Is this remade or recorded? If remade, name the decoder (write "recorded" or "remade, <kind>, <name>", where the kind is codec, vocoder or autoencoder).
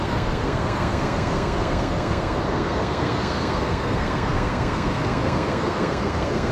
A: remade, codec, SNAC